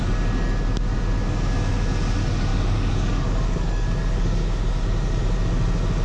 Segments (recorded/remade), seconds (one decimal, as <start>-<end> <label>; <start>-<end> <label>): 0.0-2.5 recorded; 2.5-5.2 remade; 5.2-6.0 recorded